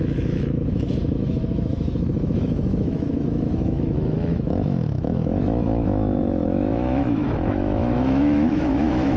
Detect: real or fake fake